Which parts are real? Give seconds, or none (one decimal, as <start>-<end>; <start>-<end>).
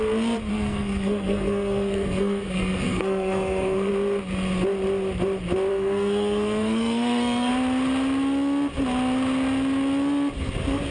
0.0-0.5; 3.9-5.7; 7.5-10.9